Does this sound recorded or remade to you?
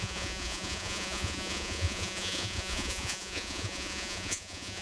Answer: remade